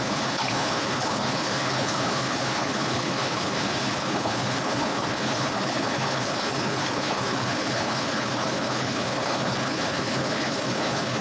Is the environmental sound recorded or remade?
remade